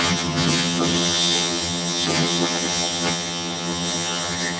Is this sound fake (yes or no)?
yes